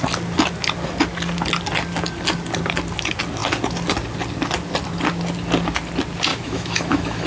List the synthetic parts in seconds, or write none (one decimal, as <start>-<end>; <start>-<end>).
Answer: 6.3-7.3